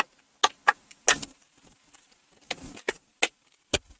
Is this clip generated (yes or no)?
no